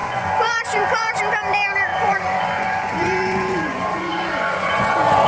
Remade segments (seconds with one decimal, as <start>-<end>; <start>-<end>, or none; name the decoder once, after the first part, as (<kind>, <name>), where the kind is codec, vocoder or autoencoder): 0.0-1.2 (vocoder, Vocos); 1.9-5.3